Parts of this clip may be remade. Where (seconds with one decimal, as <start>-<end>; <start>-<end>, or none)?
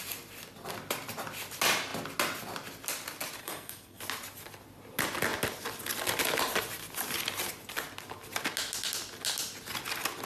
3.4-4.0